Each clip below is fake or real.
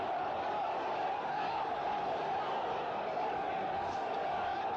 fake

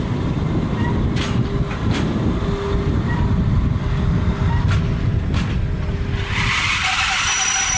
real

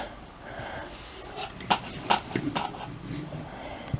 real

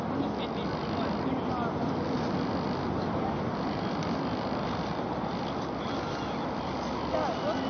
real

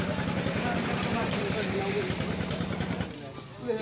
real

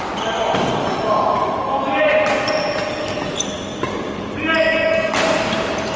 real